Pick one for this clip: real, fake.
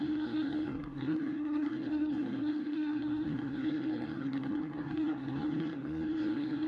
fake